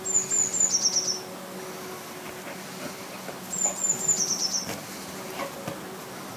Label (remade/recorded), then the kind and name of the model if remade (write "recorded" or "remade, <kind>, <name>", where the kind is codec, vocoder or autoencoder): recorded